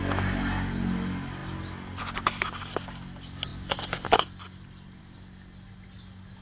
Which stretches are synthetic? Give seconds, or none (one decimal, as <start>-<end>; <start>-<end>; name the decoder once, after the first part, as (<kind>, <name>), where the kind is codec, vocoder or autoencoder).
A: none